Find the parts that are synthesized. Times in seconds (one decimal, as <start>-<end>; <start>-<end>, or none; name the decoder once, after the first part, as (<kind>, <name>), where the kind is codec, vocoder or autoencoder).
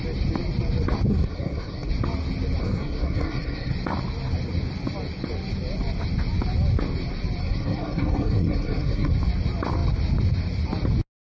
1.1-1.9 (codec, SNAC); 2.6-3.7; 7.4-9.1